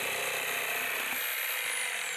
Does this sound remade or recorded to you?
recorded